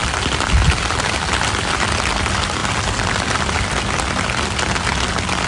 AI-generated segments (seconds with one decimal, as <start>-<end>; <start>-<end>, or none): none